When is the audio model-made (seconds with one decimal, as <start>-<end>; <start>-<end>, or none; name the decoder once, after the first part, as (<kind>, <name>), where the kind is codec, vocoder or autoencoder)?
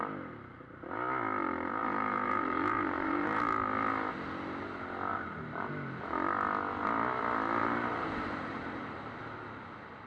1.8-3.4 (vocoder, BigVGAN v2); 5.1-5.7; 7.6-9.2